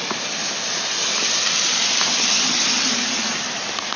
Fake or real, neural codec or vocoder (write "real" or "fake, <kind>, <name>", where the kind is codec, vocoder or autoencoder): fake, vocoder, BigVGAN v2